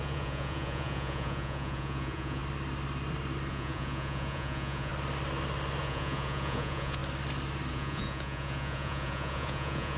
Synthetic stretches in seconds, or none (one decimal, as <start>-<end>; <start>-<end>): 0.0-2.4; 3.5-4.9; 5.8-7.0; 7.7-10.0